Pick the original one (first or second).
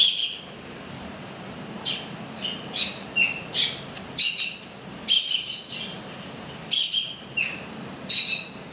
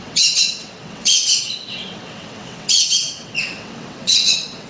first